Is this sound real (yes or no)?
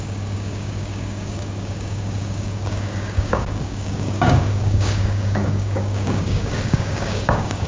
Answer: no